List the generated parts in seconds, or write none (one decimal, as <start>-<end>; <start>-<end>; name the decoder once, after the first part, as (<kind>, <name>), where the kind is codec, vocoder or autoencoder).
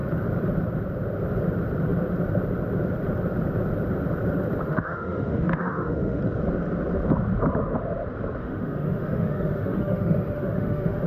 4.6-6.2 (autoencoder, DAC-VAE); 8.4-11.1